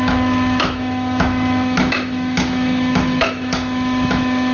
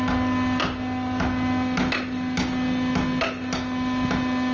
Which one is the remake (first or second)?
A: first